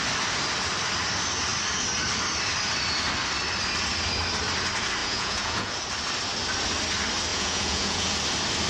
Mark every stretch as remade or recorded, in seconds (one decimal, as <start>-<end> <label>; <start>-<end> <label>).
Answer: 0.0-5.0 recorded; 5.0-5.7 remade; 5.7-7.3 recorded; 7.3-8.2 remade; 8.2-8.7 recorded